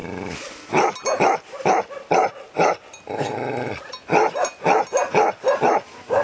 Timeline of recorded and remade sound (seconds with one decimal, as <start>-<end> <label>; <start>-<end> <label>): 0.0-6.2 recorded